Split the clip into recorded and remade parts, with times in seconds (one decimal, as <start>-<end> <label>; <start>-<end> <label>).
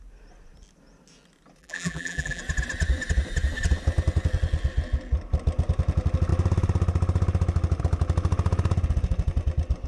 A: 0.0-1.6 recorded; 1.6-2.4 remade; 2.4-9.9 recorded